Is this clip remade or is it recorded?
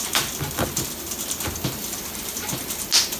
recorded